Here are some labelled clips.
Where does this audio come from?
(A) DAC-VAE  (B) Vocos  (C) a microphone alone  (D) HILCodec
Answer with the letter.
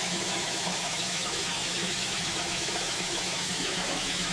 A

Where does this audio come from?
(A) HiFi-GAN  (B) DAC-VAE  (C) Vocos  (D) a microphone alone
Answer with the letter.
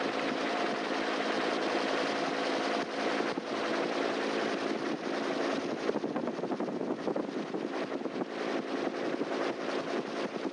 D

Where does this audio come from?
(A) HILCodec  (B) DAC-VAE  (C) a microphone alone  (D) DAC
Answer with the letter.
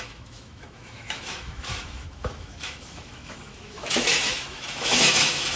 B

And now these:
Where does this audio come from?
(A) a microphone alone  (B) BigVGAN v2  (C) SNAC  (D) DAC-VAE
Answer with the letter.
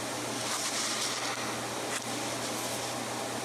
A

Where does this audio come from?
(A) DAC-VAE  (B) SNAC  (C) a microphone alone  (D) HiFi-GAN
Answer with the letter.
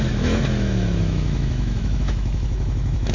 A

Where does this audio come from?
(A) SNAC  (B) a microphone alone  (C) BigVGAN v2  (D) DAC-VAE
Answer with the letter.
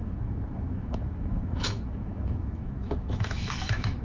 D